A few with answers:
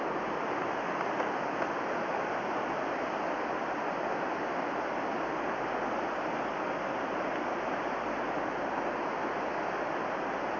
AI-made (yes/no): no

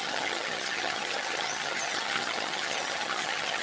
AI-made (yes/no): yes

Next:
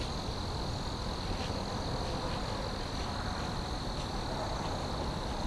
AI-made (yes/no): no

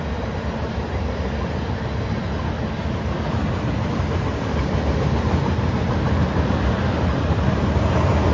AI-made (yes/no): no